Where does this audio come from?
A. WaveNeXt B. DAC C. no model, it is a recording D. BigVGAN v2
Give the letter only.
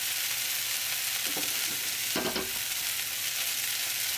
C